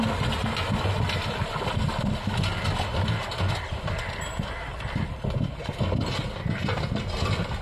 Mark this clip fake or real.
real